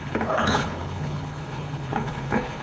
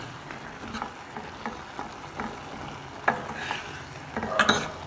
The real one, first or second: second